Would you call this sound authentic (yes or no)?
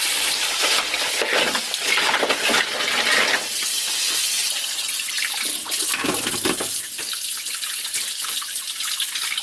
yes